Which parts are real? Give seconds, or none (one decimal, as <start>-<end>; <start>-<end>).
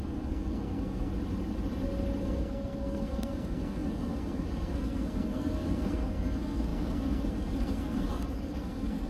1.1-2.2